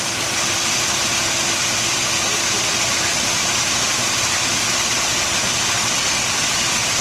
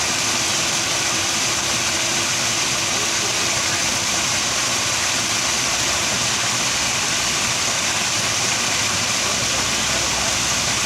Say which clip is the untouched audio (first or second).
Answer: first